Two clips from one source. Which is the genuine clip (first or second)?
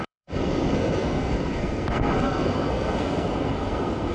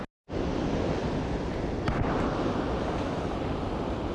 second